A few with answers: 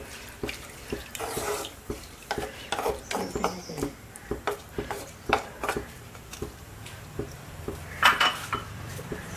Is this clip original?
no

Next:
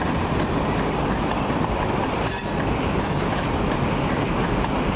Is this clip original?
no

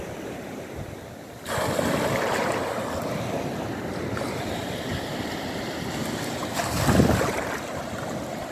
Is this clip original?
yes